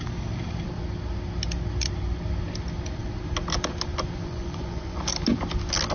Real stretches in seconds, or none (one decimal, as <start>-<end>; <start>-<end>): 0.0-4.2; 5.1-5.9